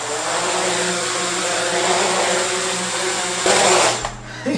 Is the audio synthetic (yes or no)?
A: no